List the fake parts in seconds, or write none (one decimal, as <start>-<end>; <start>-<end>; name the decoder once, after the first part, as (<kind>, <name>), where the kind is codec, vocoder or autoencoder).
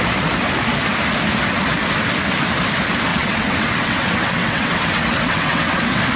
3.1-5.8 (vocoder, WaveNeXt)